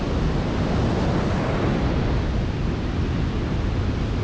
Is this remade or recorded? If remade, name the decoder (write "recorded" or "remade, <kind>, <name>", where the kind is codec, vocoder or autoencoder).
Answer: recorded